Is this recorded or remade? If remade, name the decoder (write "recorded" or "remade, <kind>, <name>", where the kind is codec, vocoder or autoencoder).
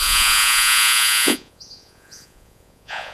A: remade, vocoder, Vocos